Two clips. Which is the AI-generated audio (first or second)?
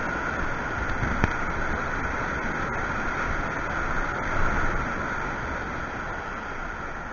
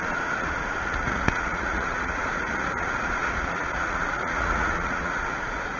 second